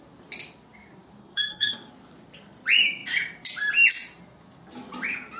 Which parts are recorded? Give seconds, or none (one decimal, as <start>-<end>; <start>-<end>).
0.0-1.2; 1.9-5.4